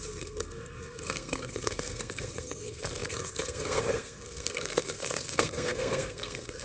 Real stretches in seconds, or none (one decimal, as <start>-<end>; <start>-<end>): none